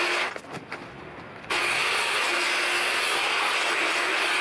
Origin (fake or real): real